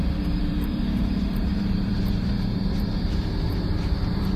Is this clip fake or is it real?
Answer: fake